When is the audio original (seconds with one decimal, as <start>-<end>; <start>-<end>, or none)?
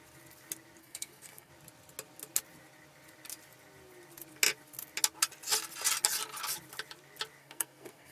0.0-0.8; 1.5-7.4